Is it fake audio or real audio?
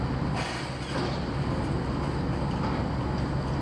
real